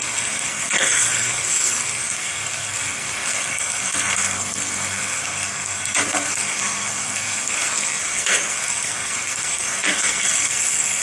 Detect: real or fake fake